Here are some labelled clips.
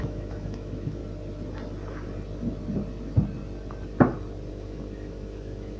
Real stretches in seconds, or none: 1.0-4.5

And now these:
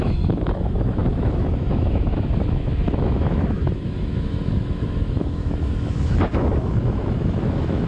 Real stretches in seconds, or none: none